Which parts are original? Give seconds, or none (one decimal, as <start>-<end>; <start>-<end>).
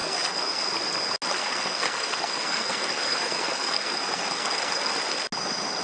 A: 0.7-1.4; 4.9-5.8